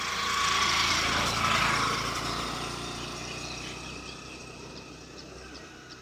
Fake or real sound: real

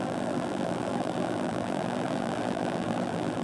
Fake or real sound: fake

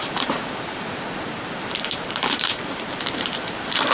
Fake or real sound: fake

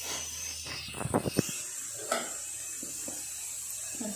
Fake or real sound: real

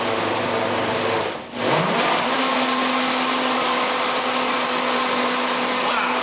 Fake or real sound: real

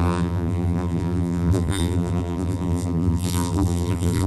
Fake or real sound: fake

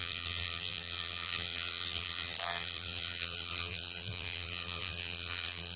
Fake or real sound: fake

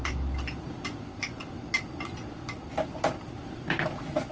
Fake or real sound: real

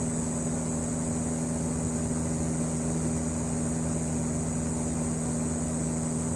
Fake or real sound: real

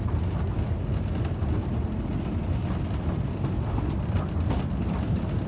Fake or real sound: real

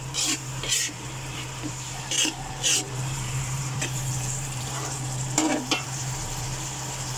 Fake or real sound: fake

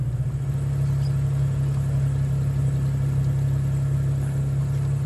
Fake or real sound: real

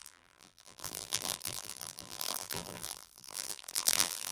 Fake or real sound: fake